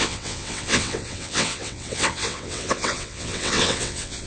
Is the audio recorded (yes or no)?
no